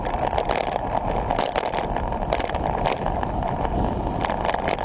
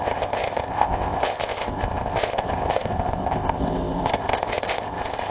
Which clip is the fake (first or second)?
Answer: second